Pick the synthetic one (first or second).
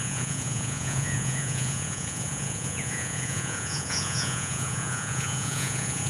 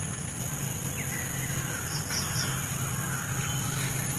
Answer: first